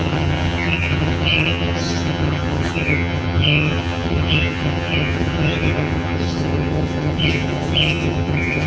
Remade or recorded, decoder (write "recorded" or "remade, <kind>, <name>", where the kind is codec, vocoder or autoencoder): remade, vocoder, HiFi-GAN